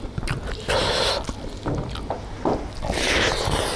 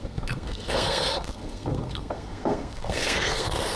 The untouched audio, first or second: first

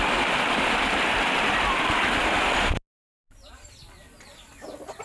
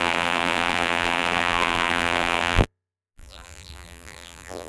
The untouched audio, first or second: first